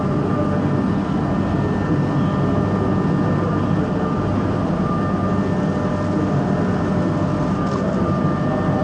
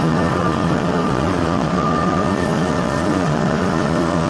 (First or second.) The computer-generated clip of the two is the second